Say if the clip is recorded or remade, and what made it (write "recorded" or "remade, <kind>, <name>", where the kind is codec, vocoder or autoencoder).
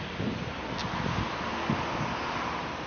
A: recorded